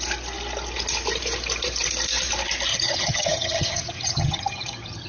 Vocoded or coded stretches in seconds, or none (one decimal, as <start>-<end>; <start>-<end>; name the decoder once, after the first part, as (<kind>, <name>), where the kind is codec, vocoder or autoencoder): 2.7-5.1 (vocoder, HiFi-GAN)